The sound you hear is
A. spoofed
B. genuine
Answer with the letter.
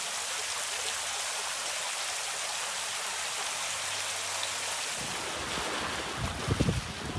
B